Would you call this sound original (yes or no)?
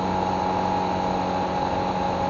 yes